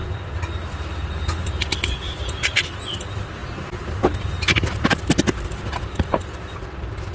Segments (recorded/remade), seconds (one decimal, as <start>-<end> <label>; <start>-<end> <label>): 0.0-7.1 recorded